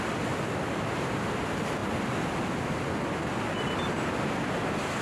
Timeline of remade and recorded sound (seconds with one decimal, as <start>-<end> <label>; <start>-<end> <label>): 0.0-5.0 recorded